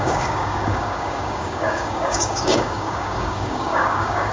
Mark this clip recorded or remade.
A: remade